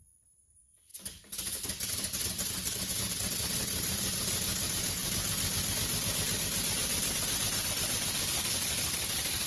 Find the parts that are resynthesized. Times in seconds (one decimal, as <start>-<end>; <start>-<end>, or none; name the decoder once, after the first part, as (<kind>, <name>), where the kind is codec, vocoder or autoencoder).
0.0-0.9 (vocoder, BigVGAN v2); 2.3-9.5